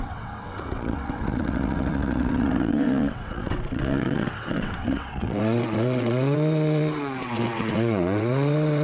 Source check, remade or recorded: remade